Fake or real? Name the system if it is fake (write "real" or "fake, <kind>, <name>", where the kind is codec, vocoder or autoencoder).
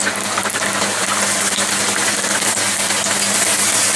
real